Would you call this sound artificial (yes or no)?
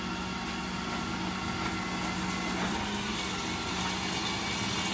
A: no